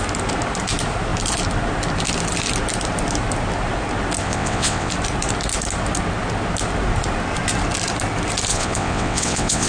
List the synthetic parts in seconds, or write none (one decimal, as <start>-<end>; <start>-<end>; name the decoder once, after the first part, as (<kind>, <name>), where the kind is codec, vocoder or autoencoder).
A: 4.2-4.9 (vocoder, WaveNeXt); 8.5-9.7